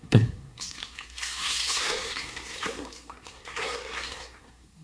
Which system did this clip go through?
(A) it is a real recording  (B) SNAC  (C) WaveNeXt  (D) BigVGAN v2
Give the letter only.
B